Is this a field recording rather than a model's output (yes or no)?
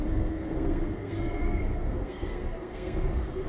no